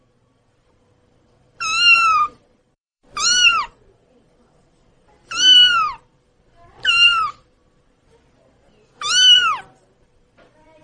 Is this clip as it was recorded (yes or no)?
no